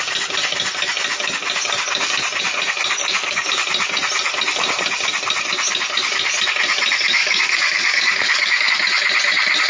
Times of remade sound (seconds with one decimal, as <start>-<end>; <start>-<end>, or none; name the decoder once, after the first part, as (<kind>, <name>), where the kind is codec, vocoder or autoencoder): 3.0-3.5 (codec, DAC); 7.2-8.7